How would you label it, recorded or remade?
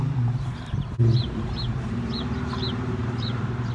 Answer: remade